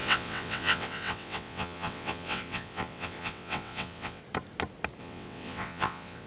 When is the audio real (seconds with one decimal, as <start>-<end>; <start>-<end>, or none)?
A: 4.2-5.0